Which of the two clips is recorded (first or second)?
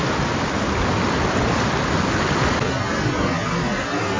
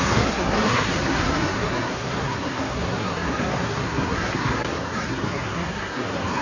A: first